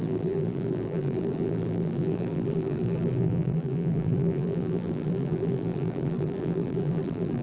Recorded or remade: remade